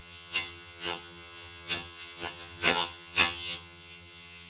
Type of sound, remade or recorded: remade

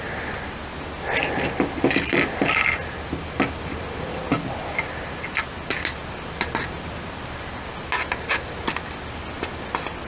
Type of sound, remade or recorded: recorded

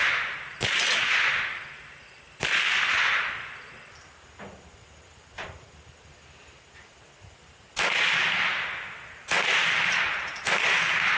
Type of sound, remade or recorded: recorded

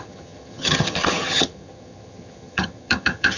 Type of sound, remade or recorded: remade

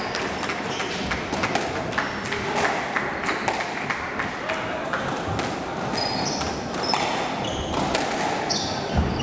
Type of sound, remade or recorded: recorded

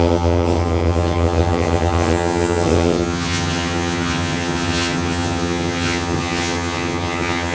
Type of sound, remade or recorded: remade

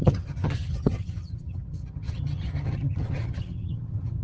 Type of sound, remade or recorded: remade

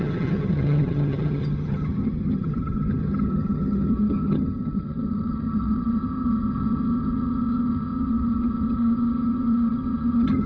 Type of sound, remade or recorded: remade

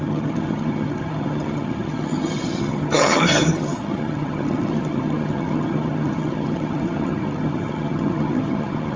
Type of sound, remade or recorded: remade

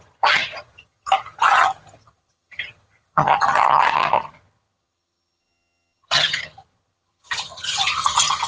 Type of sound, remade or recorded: remade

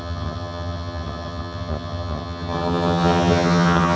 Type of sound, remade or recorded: remade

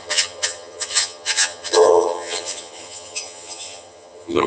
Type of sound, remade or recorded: remade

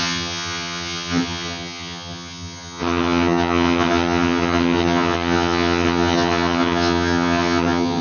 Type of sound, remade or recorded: remade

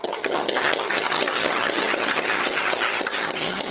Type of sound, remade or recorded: remade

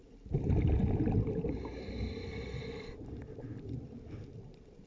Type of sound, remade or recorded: recorded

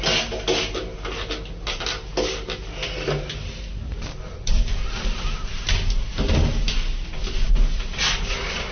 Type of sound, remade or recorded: recorded